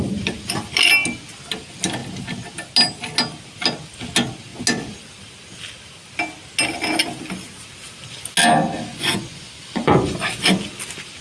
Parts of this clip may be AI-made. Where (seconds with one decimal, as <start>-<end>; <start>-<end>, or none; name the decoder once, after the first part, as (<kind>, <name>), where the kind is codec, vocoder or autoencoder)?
8.9-10.2 (vocoder, Vocos)